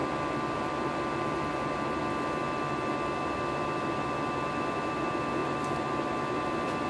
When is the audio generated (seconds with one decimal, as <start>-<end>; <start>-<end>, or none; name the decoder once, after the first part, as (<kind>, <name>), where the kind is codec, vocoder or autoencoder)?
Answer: 0.0-2.0 (vocoder, BigVGAN v2); 5.4-6.1

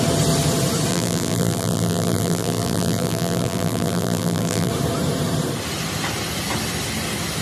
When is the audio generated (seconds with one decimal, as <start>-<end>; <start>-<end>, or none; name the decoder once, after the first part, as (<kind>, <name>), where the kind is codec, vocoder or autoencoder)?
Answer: 0.9-4.7 (vocoder, BigVGAN v2)

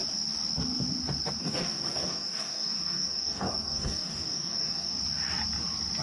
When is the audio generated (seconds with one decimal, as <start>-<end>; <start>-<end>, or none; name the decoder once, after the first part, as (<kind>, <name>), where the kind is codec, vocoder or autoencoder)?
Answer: 1.4-5.0 (codec, DAC)

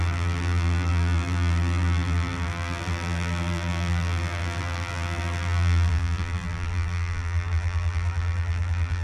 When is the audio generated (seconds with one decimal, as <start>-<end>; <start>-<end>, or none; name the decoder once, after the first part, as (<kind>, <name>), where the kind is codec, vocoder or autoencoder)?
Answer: 0.0-9.0 (vocoder, BigVGAN v2)

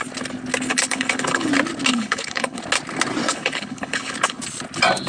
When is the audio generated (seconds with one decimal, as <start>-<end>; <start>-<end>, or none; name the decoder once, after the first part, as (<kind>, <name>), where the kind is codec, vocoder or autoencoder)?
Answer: 0.7-1.5 (codec, HILCodec); 1.9-2.6; 3.2-4.4

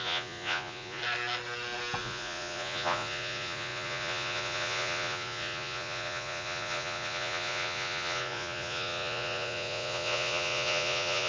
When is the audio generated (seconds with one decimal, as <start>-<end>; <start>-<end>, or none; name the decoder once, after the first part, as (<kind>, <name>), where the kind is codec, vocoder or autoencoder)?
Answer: 0.0-1.0 (vocoder, Vocos); 2.0-11.3

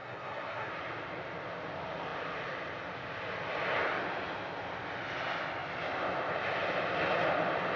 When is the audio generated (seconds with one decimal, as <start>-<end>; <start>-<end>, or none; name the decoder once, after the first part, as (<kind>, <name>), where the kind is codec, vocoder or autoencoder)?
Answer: 0.0-0.7 (codec, SNAC)

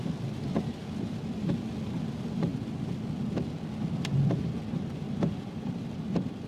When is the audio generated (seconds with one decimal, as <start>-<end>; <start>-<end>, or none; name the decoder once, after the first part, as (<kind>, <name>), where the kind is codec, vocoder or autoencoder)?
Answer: 0.0-2.5 (vocoder, BigVGAN v2); 4.7-6.5